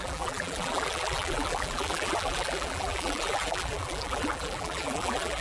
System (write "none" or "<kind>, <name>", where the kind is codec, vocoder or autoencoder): vocoder, BigVGAN v2